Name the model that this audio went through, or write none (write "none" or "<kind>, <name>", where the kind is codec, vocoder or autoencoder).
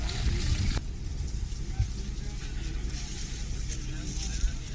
none